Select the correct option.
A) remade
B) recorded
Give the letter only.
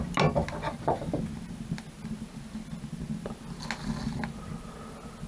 B